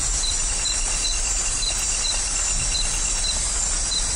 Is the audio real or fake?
real